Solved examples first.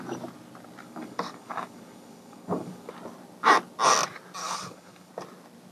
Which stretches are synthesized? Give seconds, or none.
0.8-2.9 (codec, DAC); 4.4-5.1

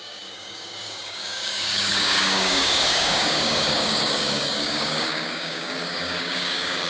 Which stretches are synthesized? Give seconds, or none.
0.0-6.9 (codec, DAC)

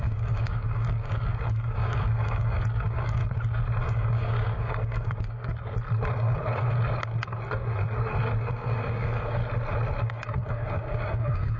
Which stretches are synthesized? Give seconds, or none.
0.0-3.2 (codec, DAC); 3.9-5.5; 8.4-9.4; 10.0-11.6

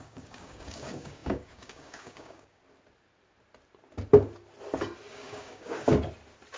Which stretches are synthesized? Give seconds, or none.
0.0-2.6 (codec, DAC); 5.1-5.9

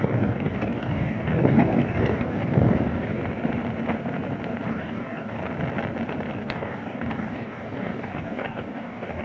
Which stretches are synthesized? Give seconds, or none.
0.0-3.2 (codec, DAC); 4.7-5.4; 6.3-9.2

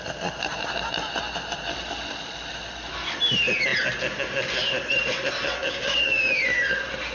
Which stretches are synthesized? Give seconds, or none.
5.6-6.4 (codec, DAC)

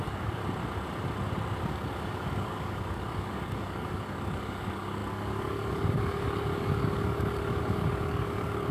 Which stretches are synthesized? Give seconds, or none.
0.0-0.4 (codec, DAC); 1.6-8.7